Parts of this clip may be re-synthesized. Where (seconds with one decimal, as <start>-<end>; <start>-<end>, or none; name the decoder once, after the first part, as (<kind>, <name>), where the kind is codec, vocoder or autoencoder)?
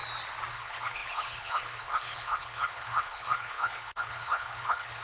0.5-5.0 (codec, HILCodec)